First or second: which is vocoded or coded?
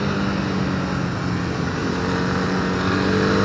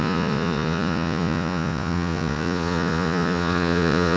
second